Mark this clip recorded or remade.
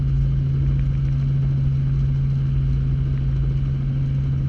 recorded